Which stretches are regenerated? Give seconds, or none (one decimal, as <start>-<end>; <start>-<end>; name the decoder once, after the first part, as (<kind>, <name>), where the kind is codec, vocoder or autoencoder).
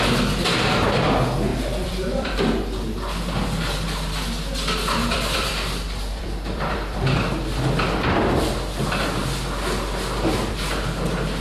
1.5-2.5 (vocoder, BigVGAN v2); 5.0-7.6